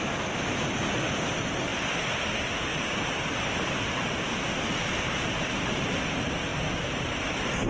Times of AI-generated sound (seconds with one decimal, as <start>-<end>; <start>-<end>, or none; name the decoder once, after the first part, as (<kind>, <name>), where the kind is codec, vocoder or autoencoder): 2.7-5.3 (vocoder, BigVGAN v2)

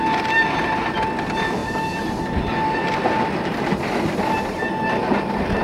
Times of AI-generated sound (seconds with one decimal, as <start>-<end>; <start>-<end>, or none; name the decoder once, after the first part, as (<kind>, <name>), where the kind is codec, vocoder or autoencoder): none

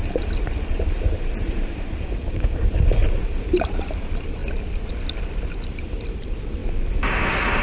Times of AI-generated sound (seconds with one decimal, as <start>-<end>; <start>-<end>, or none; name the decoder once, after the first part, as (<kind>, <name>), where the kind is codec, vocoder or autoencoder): 0.0-4.4 (vocoder, BigVGAN v2); 5.7-6.6

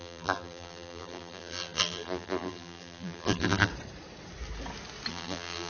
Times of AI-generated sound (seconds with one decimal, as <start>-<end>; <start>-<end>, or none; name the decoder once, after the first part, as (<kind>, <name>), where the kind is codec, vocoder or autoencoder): 0.0-3.7 (vocoder, BigVGAN v2); 5.1-5.7

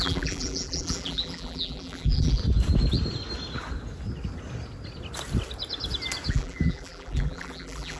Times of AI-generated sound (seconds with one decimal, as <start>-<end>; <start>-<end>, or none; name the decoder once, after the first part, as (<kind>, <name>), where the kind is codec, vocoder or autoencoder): 0.0-2.4 (vocoder, BigVGAN v2); 6.3-8.0